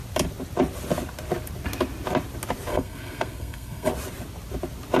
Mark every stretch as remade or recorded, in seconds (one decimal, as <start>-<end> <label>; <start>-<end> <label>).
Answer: 0.0-2.7 recorded; 2.7-3.9 remade; 3.9-5.0 recorded